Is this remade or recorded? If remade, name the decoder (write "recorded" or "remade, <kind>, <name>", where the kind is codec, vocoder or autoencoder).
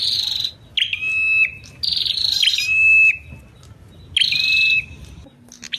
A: recorded